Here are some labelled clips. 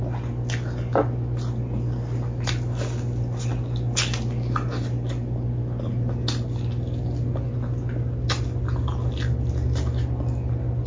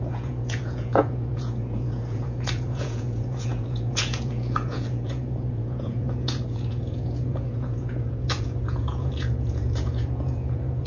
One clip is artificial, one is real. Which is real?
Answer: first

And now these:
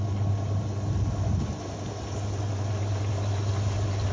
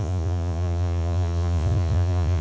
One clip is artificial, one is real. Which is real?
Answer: first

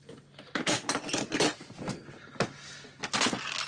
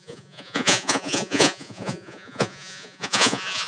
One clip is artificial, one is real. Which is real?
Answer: first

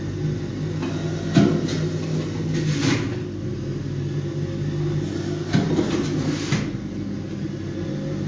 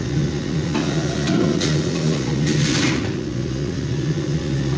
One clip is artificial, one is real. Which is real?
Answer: first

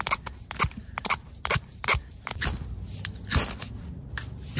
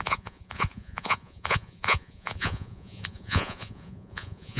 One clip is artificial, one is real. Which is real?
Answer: first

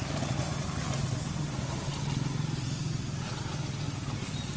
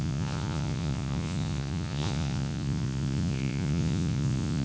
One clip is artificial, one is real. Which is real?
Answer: first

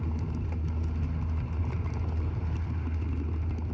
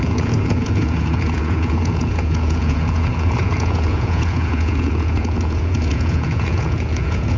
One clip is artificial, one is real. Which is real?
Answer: first